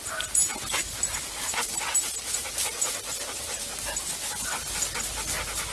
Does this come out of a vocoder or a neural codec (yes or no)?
no